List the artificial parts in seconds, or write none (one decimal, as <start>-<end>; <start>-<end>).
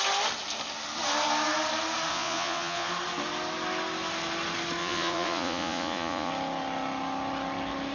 2.1-2.9; 4.8-6.3